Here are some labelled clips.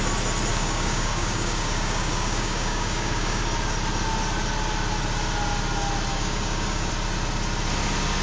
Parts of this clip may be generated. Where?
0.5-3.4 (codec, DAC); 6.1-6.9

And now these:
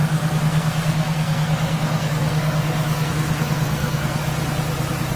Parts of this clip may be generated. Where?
0.0-4.2 (codec, SNAC)

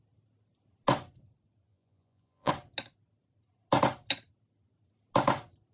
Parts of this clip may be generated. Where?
1.7-2.5 (vocoder, Vocos)